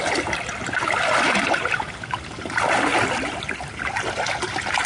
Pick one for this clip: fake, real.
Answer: real